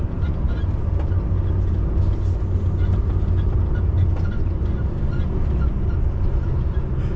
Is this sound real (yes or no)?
yes